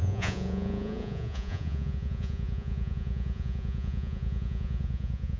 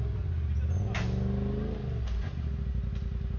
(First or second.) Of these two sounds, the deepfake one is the first